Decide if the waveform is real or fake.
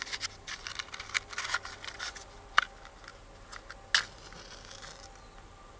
real